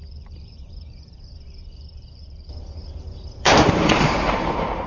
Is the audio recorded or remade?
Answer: remade